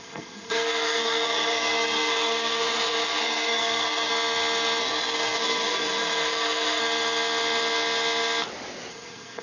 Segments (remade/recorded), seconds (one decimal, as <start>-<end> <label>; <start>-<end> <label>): 0.0-4.1 remade; 4.1-4.8 recorded; 4.8-6.8 remade; 6.8-8.9 recorded; 8.9-9.4 remade